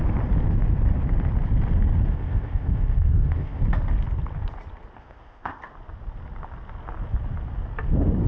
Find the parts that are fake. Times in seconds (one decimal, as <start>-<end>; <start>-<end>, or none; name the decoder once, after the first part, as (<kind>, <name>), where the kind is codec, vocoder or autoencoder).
2.1-3.6 (codec, ZipCodec); 5.0-5.6